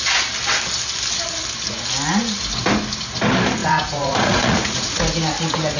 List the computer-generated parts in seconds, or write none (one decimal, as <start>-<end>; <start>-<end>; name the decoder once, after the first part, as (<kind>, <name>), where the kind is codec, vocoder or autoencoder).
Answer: 3.6-5.0 (vocoder, Vocos)